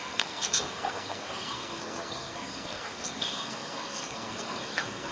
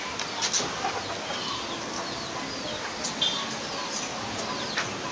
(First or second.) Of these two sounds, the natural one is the second